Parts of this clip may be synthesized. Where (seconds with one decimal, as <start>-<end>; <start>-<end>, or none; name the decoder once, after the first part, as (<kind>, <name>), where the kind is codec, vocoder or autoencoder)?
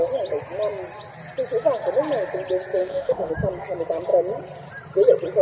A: 2.8-3.3 (autoencoder, DAC-VAE)